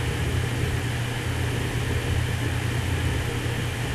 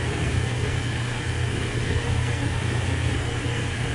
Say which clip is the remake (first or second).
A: second